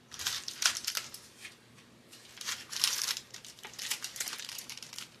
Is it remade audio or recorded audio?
remade